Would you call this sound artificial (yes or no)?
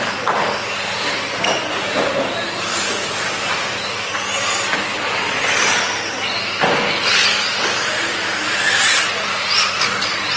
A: no